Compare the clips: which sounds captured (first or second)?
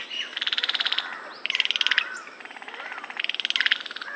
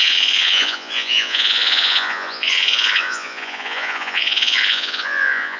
first